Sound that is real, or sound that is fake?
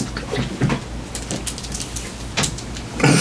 real